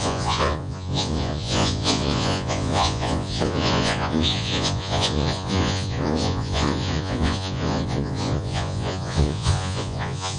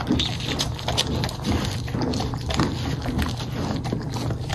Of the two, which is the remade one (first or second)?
first